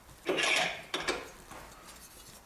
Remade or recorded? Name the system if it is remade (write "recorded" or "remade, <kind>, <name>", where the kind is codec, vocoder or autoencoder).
remade, vocoder, BigVGAN v2